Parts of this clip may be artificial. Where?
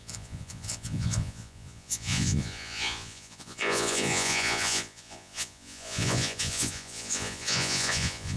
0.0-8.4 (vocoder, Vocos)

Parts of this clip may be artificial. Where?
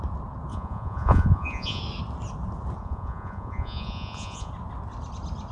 0.5-1.8 (vocoder, Vocos); 2.8-4.5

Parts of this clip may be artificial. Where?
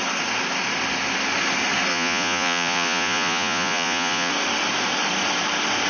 1.9-4.3 (vocoder, Vocos)